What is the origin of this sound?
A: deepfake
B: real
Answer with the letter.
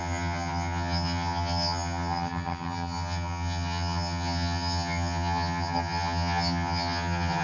A